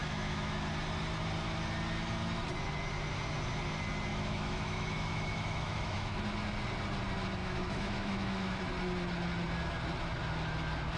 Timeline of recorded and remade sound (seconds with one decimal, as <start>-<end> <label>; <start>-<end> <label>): 0.0-0.7 remade; 0.7-4.1 recorded; 4.1-6.2 remade; 6.2-7.4 recorded; 7.4-8.6 remade; 8.6-11.0 recorded